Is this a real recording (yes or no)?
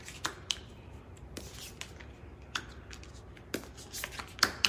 yes